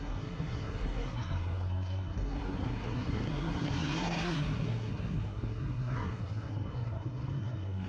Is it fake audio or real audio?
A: fake